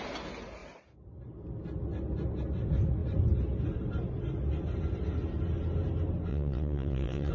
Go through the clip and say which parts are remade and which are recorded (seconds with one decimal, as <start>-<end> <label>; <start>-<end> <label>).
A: 0.0-6.3 recorded; 6.3-7.3 remade